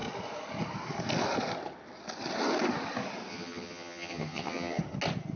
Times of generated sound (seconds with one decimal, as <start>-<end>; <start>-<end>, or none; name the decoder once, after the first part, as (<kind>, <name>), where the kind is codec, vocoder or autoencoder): 3.3-4.8 (vocoder, HiFi-GAN)